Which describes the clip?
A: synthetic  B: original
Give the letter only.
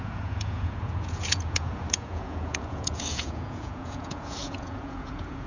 A